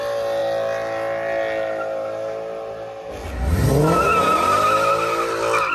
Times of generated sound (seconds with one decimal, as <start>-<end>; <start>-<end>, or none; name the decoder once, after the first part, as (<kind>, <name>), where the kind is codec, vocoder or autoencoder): none